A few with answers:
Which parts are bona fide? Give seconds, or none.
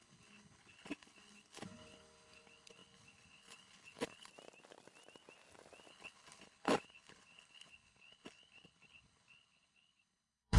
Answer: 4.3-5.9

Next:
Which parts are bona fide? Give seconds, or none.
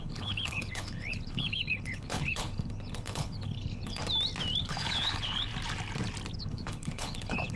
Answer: 4.0-4.6; 5.5-6.4